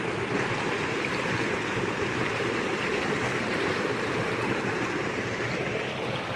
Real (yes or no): no